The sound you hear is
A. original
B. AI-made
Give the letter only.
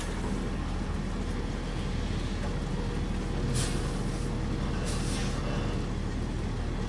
A